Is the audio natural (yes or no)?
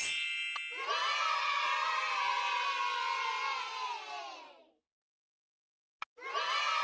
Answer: yes